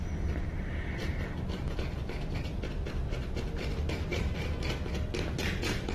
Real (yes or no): yes